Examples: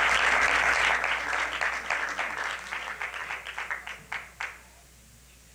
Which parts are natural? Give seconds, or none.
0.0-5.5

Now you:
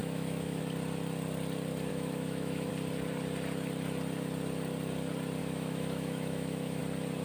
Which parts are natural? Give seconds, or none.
0.6-1.9; 2.7-5.4; 6.8-7.2

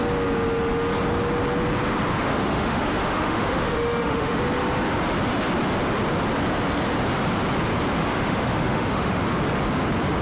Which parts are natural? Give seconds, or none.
0.0-2.1; 4.4-8.0; 9.2-10.2

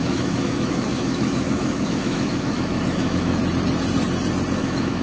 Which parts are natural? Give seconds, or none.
3.4-4.6

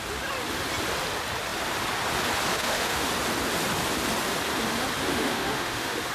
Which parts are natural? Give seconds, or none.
0.0-2.5; 3.1-5.1

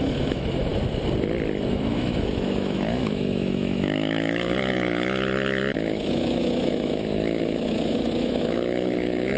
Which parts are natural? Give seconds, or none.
0.7-1.7

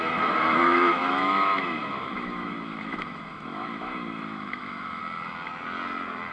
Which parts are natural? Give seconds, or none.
5.0-6.3